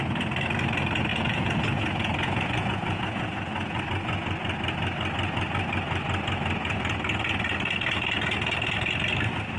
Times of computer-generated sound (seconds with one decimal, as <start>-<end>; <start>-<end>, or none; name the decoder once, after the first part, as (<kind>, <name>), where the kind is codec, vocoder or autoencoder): 1.1-3.8 (vocoder, Vocos)